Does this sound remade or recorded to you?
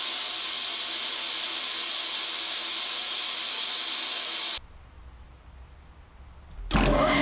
recorded